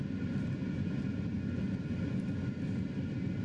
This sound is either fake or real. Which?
real